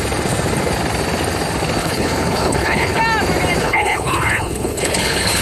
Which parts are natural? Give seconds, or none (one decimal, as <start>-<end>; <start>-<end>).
0.0-1.8; 3.0-3.6